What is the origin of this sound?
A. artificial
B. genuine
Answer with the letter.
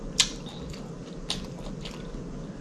A